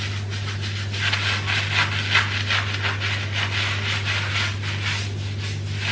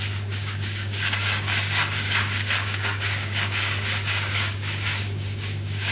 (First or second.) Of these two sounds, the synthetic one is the second